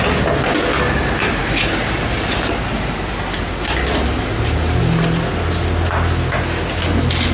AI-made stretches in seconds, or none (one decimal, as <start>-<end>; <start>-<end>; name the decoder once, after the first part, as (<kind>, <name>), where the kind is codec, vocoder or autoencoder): none